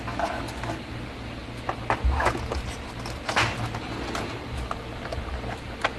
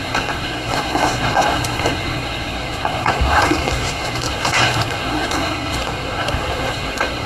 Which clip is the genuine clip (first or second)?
first